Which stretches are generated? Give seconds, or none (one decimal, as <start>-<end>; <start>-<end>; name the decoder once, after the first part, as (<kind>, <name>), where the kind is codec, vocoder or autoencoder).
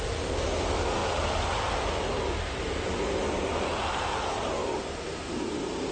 none